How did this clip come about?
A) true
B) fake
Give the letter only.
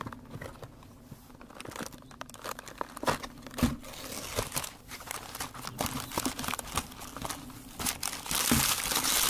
A